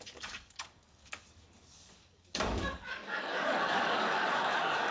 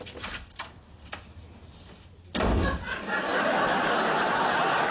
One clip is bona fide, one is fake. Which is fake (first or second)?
first